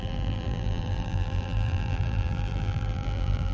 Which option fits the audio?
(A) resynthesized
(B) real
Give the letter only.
A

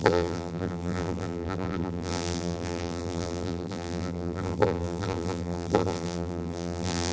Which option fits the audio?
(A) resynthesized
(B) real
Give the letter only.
A